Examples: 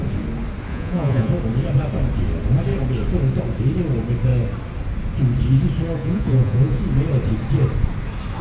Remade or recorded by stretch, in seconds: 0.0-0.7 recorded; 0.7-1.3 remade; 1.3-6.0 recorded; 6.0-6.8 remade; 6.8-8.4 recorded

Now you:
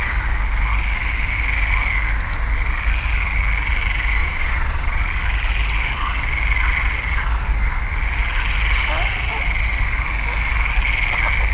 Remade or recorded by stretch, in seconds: 0.0-4.2 recorded; 4.2-5.0 remade; 5.0-11.5 recorded

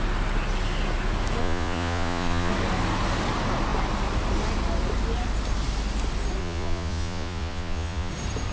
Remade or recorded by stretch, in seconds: 0.0-1.4 recorded; 1.4-2.5 remade; 2.5-6.4 recorded; 6.4-8.1 remade; 8.1-8.5 recorded